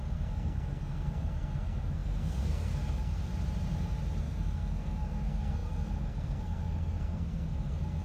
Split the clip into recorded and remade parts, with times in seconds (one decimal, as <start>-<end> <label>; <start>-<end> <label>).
0.0-3.3 remade; 3.3-4.2 recorded; 4.2-8.0 remade